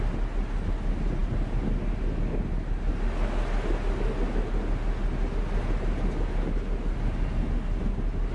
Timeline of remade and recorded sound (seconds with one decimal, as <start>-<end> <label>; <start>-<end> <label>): 0.0-1.2 recorded; 1.2-1.8 remade; 1.8-8.3 recorded